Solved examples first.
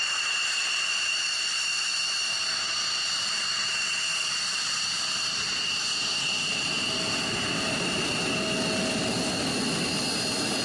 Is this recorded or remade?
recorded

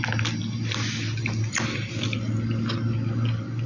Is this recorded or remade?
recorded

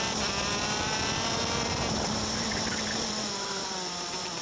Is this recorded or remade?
remade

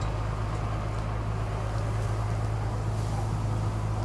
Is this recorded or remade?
recorded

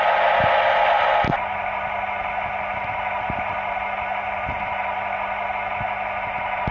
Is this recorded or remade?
recorded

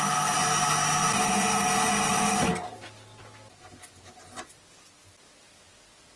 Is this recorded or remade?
recorded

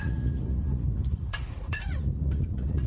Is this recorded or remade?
remade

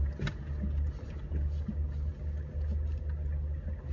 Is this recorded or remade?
recorded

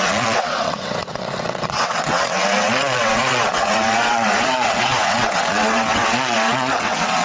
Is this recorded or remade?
remade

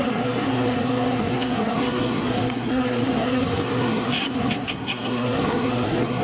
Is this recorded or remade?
remade